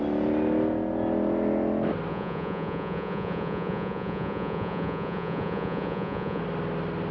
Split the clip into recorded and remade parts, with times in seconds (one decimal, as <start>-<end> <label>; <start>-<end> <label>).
0.0-2.1 recorded; 2.1-6.4 remade; 6.4-7.1 recorded